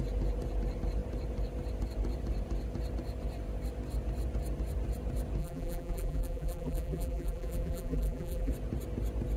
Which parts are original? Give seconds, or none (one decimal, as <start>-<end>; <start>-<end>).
0.0-5.4; 8.5-9.4